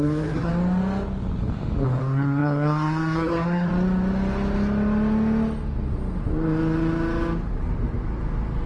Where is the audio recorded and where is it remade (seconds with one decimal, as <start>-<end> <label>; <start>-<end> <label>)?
0.0-0.5 remade; 0.5-2.0 recorded; 2.0-3.7 remade; 3.7-8.7 recorded